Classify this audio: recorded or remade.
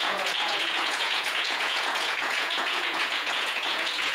remade